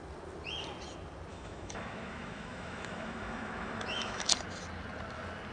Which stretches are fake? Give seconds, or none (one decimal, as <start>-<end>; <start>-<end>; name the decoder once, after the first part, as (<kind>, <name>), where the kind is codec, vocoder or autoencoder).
1.3-4.3 (autoencoder, DAC-VAE)